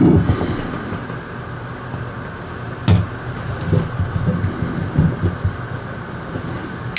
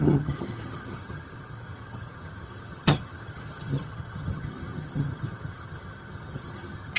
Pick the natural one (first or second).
first